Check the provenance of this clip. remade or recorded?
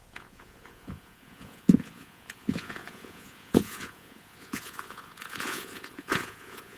remade